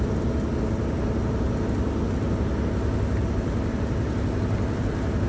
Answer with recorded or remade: recorded